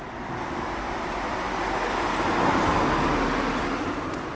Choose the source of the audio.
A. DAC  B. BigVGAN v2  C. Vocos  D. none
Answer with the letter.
D